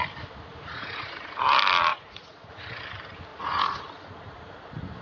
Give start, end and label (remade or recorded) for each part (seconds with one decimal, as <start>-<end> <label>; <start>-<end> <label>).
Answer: 0.0-0.5 recorded; 0.5-1.3 remade; 1.3-1.9 recorded; 1.9-2.5 remade; 2.5-3.3 recorded; 3.3-4.6 remade; 4.6-5.0 recorded

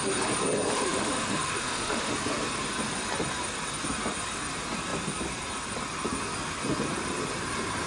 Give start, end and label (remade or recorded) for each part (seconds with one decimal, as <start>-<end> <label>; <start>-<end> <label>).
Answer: 0.0-0.7 recorded; 0.7-2.1 remade; 2.1-7.9 recorded

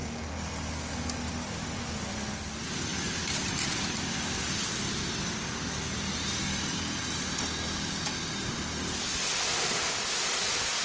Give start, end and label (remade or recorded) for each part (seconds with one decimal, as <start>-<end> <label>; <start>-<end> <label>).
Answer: 0.0-2.9 recorded; 2.9-5.2 remade; 5.2-10.8 recorded

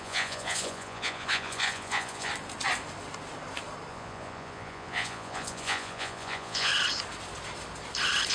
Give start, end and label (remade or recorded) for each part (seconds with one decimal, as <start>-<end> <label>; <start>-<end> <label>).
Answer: 0.0-2.3 remade; 2.3-3.9 recorded; 3.9-6.7 remade; 6.7-8.3 recorded

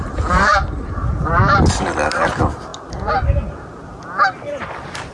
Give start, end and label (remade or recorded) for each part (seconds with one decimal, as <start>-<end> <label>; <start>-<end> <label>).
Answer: 0.0-2.7 remade; 2.7-4.5 recorded; 4.5-5.1 remade

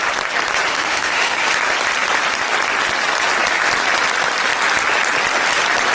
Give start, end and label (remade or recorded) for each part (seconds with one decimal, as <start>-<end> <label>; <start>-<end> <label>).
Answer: 0.0-0.7 recorded; 0.7-1.5 remade; 1.5-5.9 recorded